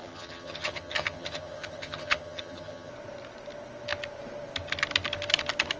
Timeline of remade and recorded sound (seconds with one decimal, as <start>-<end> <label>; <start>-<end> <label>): 0.0-2.9 remade; 2.9-5.8 recorded